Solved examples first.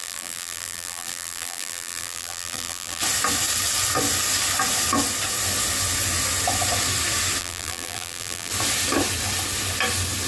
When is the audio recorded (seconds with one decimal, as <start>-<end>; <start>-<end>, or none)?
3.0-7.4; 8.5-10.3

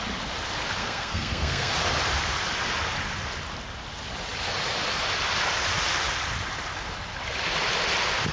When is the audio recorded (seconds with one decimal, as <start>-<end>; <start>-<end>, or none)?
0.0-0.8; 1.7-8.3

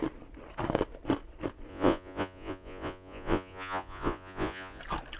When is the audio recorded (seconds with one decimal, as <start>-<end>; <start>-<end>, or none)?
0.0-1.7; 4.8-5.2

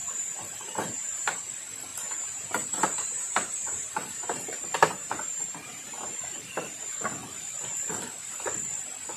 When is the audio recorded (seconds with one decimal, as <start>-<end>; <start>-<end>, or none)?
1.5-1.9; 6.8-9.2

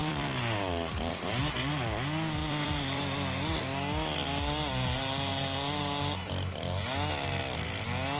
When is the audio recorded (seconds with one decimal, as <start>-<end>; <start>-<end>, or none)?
1.1-2.4; 3.6-8.2

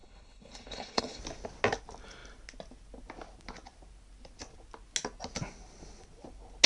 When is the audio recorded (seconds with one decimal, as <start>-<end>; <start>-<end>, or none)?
1.2-6.7

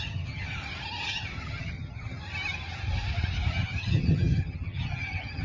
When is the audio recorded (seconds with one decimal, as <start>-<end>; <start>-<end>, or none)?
0.6-1.1; 2.2-3.5

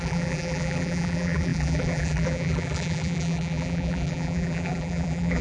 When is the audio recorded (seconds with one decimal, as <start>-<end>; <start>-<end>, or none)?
none